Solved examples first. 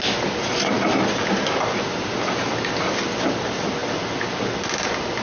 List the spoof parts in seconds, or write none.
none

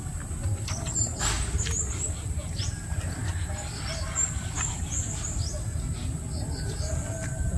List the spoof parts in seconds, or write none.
none

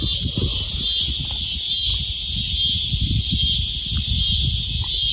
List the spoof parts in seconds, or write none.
none

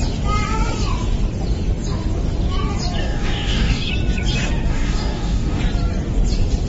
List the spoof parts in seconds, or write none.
3.0-3.9 (codec, DAC); 4.7-5.6

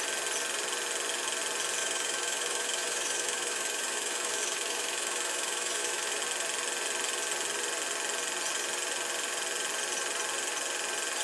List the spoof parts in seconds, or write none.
1.8-6.2 (autoencoder, DAC-VAE)

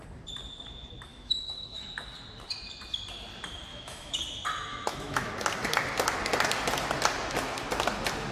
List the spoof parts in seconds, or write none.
1.1-1.9 (autoencoder, DAC-VAE); 3.7-4.2; 4.7-5.3

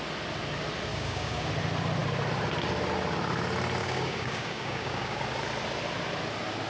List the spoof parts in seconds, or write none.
0.9-1.5 (codec, DAC); 3.8-5.2

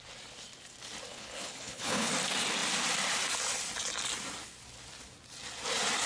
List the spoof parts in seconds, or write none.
1.1-2.1 (codec, HILCodec)